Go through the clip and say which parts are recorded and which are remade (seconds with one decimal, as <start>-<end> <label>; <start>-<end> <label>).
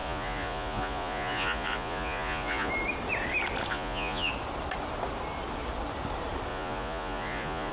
0.0-2.7 remade; 2.7-3.7 recorded; 3.7-4.3 remade; 4.3-6.5 recorded; 6.5-7.7 remade